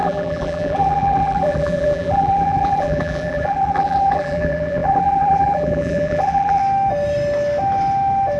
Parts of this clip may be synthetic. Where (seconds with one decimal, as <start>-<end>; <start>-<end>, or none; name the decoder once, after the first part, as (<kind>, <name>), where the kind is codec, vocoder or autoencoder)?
0.0-6.6 (vocoder, BigVGAN v2)